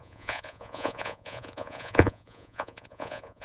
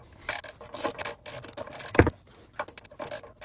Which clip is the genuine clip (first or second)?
second